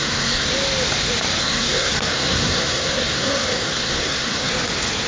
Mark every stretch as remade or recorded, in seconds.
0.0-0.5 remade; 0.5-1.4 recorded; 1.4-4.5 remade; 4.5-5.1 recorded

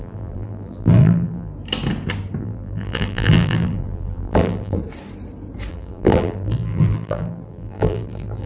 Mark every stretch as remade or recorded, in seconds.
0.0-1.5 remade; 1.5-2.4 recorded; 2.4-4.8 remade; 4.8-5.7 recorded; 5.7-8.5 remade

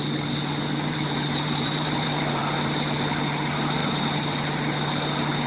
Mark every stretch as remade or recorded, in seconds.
0.0-0.7 recorded; 0.7-2.4 remade; 2.4-5.5 recorded